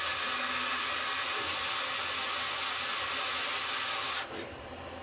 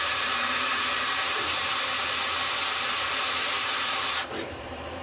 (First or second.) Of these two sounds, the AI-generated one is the second